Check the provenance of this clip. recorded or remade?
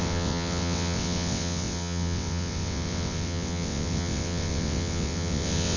remade